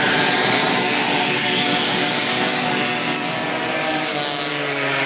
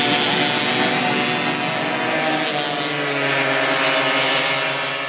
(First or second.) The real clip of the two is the second